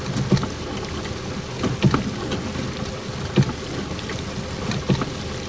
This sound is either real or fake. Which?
real